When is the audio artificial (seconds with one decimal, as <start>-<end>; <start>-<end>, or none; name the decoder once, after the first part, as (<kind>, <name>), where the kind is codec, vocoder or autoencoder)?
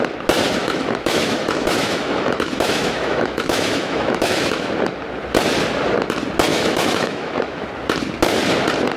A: 0.6-4.7 (autoencoder, DAC-VAE); 6.5-7.7